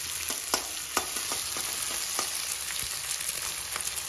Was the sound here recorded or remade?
recorded